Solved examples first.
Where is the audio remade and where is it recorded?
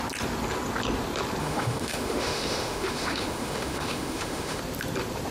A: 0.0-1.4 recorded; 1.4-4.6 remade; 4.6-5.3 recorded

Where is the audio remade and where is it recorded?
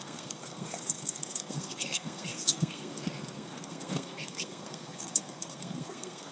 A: 0.0-6.3 remade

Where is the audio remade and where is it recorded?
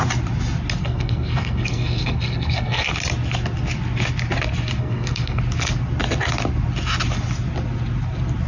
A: 0.0-0.8 recorded; 0.8-2.9 remade; 2.9-4.8 recorded; 4.8-5.4 remade; 5.4-8.5 recorded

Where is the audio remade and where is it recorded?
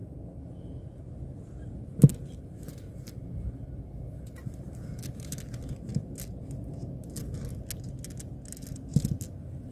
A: 0.0-9.7 recorded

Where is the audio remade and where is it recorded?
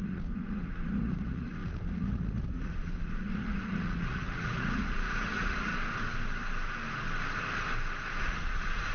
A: 0.0-5.7 remade; 5.7-8.2 recorded; 8.2-8.9 remade